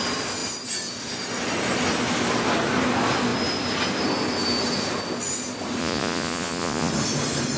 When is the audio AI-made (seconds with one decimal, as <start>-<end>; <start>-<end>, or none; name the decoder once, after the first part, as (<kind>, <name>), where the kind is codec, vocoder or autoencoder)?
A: 5.8-6.9 (vocoder, Vocos)